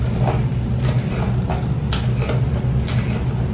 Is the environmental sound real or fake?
real